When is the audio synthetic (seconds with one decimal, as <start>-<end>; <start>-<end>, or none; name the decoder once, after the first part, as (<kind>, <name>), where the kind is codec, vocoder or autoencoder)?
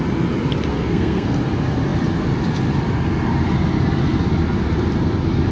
0.7-1.4 (codec, SNAC)